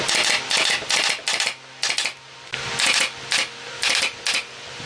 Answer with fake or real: real